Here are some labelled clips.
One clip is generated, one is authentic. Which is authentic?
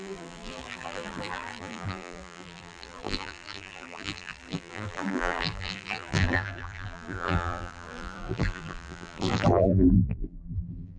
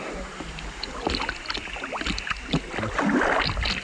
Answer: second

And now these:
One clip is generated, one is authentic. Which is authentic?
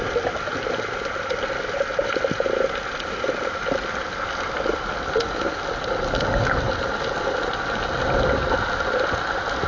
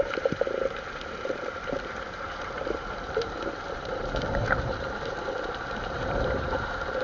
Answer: first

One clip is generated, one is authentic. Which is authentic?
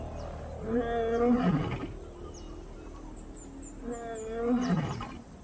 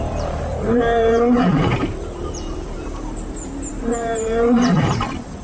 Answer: first